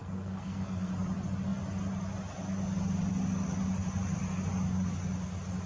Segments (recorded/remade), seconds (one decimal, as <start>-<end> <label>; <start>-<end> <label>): 0.0-0.9 remade; 0.9-5.7 recorded